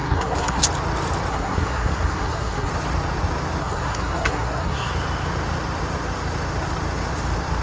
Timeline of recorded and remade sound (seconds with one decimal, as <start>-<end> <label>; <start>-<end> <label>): 0.0-0.6 remade; 0.6-1.3 recorded; 1.3-2.7 remade; 2.7-3.6 recorded; 3.6-4.9 remade; 4.9-7.6 recorded